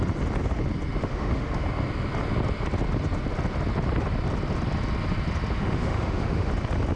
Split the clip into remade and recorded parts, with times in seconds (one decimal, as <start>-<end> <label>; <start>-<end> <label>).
0.0-1.0 recorded; 1.0-1.6 remade; 1.6-5.6 recorded; 5.6-6.5 remade; 6.5-7.0 recorded